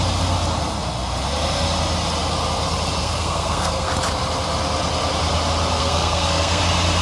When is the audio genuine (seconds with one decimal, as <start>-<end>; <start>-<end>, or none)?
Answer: 0.0-3.0; 3.9-5.8; 6.6-7.0